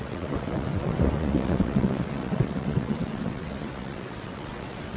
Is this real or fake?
fake